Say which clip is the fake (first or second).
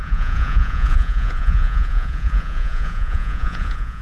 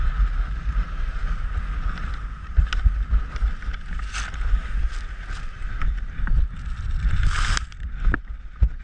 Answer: first